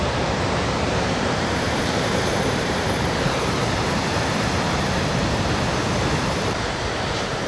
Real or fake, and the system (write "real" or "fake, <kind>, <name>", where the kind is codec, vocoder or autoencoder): fake, vocoder, BigVGAN v2